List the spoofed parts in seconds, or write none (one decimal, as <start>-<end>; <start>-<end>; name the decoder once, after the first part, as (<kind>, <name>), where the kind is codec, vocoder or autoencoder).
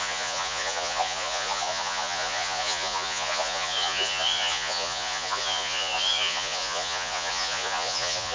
0.0-8.3 (vocoder, Vocos)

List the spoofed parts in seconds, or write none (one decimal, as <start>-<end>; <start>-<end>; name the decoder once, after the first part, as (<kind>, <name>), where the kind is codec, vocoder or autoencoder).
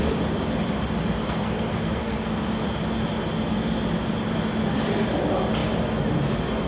1.2-2.5 (codec, SNAC)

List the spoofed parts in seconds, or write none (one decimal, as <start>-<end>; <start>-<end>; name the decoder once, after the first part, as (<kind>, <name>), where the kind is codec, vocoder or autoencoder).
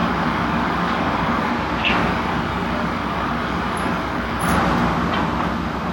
0.0-1.5 (codec, DAC); 2.0-4.4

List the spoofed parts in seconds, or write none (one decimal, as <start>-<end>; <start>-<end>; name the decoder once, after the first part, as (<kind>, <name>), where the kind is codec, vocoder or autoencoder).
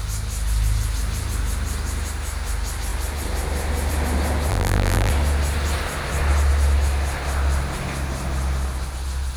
4.5-5.1 (vocoder, BigVGAN v2)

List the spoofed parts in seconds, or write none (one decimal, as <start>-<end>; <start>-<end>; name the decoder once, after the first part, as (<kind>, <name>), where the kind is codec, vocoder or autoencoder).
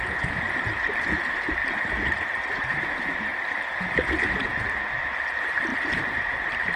1.6-2.4 (vocoder, BigVGAN v2); 5.7-6.8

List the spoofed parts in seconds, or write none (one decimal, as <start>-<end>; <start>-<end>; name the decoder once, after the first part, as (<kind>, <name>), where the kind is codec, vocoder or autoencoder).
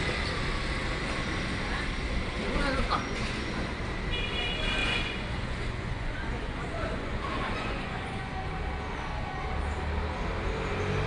3.0-3.8 (vocoder, Vocos); 4.8-8.3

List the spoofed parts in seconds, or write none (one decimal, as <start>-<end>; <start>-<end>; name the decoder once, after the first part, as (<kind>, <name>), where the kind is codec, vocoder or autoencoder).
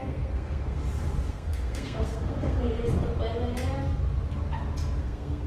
0.0-0.8 (codec, SNAC); 1.3-2.8; 5.0-5.5